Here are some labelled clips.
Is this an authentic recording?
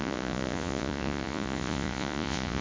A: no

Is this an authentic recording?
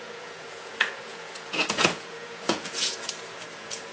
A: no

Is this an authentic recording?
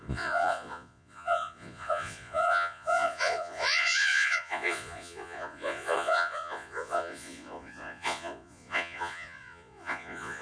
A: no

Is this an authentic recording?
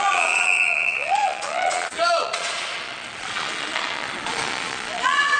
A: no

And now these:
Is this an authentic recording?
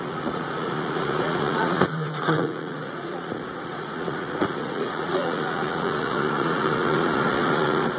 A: no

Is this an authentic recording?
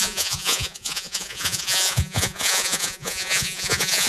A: no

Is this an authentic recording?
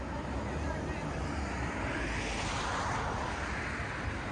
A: yes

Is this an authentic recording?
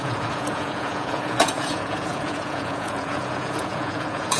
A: no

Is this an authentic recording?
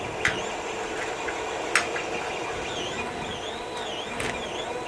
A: yes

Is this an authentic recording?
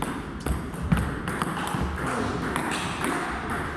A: yes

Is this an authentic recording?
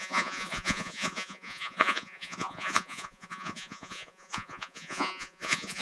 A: no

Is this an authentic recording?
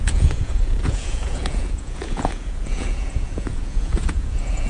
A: no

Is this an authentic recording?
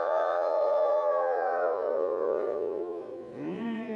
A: no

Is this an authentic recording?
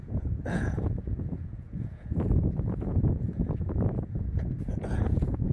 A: no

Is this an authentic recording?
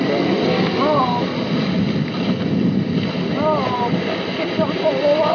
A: yes